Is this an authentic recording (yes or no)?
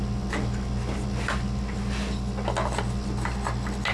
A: yes